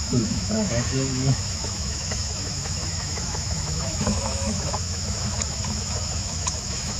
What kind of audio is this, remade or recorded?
remade